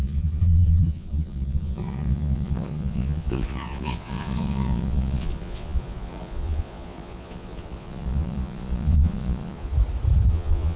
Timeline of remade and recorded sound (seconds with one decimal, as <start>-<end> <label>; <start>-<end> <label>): 0.0-9.7 remade; 9.7-10.3 recorded; 10.3-10.8 remade